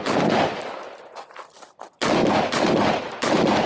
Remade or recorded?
recorded